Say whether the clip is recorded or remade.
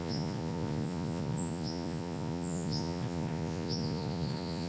remade